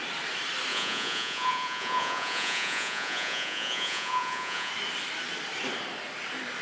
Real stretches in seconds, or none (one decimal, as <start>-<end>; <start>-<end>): 0.0-0.7; 4.7-6.6